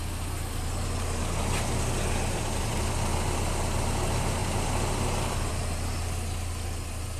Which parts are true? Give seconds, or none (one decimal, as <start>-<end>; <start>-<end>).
0.0-7.2